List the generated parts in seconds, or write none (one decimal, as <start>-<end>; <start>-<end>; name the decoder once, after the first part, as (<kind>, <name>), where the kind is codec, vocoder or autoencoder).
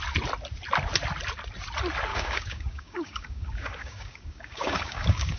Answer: 2.1-5.4 (codec, DAC)